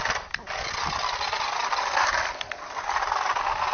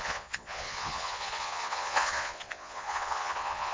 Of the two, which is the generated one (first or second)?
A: second